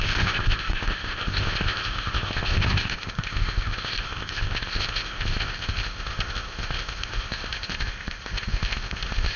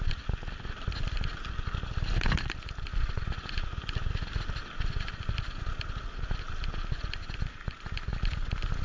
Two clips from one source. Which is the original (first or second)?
second